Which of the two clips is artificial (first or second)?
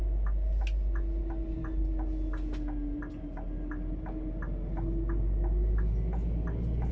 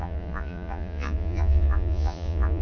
second